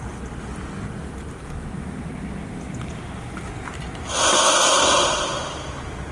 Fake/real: real